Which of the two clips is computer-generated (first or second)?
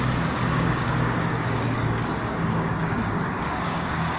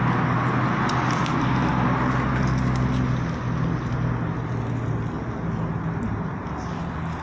first